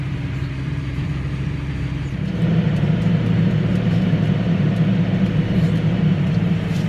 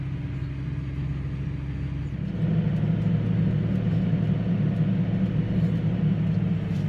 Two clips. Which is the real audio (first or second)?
second